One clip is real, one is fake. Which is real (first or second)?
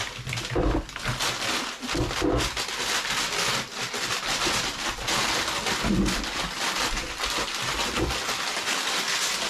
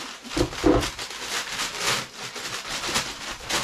first